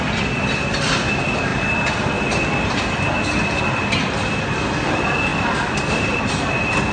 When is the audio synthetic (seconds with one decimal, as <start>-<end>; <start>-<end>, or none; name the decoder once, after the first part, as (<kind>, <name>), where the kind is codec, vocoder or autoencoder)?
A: none